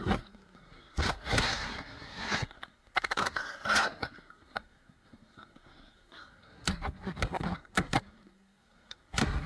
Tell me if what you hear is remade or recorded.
remade